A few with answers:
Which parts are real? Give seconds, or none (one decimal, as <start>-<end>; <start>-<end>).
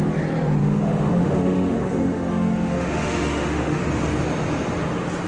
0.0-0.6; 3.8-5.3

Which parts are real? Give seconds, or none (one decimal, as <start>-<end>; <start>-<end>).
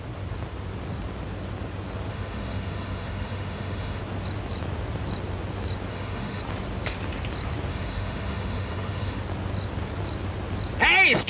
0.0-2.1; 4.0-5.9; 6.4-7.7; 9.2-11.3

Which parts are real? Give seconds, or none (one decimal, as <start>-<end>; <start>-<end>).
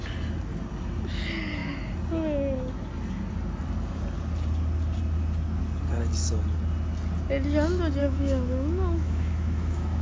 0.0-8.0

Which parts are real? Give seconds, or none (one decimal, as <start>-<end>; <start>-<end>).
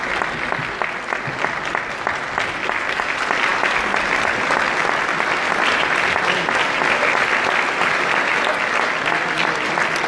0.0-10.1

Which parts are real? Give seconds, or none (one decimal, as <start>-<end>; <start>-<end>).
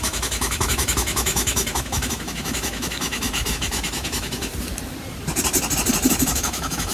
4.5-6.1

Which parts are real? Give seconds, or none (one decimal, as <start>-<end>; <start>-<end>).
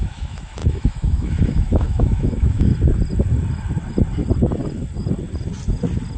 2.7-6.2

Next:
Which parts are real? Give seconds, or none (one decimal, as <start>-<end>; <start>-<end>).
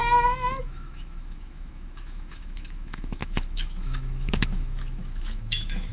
0.0-0.6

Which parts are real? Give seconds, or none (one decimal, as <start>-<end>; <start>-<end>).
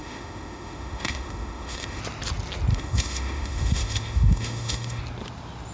2.0-2.7; 5.0-5.7